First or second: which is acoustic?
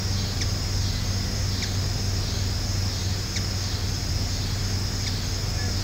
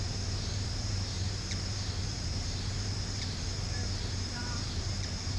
first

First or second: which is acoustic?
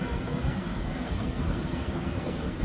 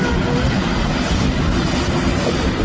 second